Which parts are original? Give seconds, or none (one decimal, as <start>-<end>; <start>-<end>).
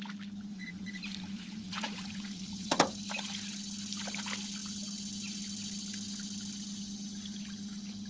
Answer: 0.0-0.5; 2.8-8.1